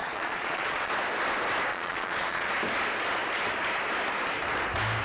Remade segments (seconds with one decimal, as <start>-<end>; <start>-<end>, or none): 0.0-0.9; 1.7-2.5